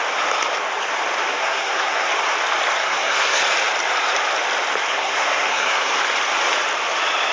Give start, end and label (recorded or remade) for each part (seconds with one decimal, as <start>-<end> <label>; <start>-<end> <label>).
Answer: 0.0-1.3 recorded; 1.3-2.1 remade; 2.1-2.8 recorded; 2.8-3.4 remade; 3.4-4.9 recorded; 4.9-6.0 remade; 6.0-7.3 recorded